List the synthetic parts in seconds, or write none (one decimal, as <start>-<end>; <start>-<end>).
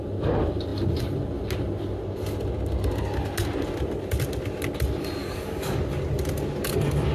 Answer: 5.2-5.8